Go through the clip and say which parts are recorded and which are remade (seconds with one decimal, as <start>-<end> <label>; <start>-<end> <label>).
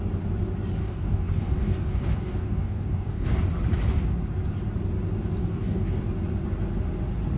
0.0-0.8 recorded; 0.8-3.3 remade; 3.3-5.4 recorded; 5.4-6.0 remade; 6.0-7.4 recorded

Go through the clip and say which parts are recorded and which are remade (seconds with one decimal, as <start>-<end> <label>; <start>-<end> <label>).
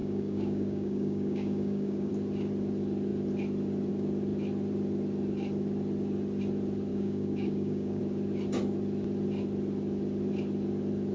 0.0-2.1 remade; 2.1-6.9 recorded; 6.9-8.0 remade; 8.0-11.1 recorded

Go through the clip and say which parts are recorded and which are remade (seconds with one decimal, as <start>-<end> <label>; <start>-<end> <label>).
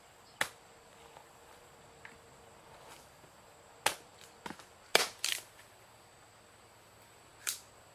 0.0-7.9 recorded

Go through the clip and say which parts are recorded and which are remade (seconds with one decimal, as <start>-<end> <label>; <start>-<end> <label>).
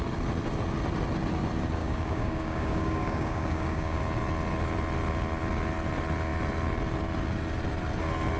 0.0-1.8 recorded; 1.8-4.0 remade; 4.0-8.4 recorded